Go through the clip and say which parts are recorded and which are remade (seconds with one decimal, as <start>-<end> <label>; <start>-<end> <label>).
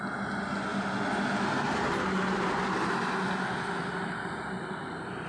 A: 0.0-5.3 recorded